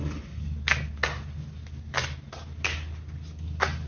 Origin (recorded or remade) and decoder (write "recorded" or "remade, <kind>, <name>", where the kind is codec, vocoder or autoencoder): recorded